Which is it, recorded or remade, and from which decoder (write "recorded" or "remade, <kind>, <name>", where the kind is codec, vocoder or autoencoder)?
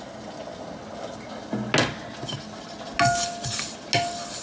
recorded